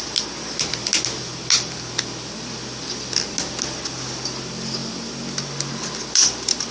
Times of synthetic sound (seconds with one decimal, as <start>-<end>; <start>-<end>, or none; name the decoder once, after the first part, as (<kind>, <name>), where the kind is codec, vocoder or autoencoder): none